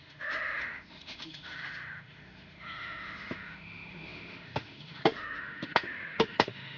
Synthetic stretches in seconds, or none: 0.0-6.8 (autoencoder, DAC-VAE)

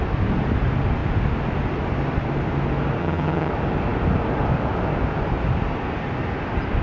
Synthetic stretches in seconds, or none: 3.0-3.5 (vocoder, HiFi-GAN)

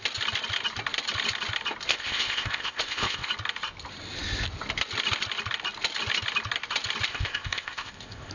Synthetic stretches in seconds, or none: 1.9-3.3 (codec, ZipCodec); 7.1-8.3

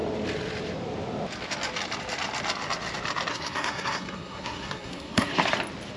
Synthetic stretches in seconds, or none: 3.3-5.3 (codec, SNAC)

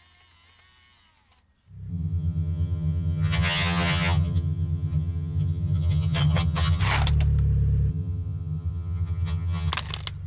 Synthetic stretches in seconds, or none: 1.9-6.8 (vocoder, HiFi-GAN); 7.9-9.7

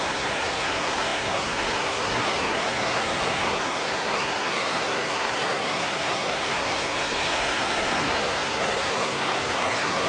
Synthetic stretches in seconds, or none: 0.0-10.1 (codec, SNAC)

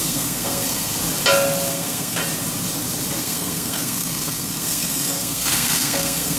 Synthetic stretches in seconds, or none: 0.0-0.9 (codec, SNAC); 1.7-2.2; 3.2-6.4